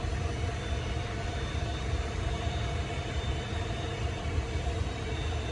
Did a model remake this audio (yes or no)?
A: yes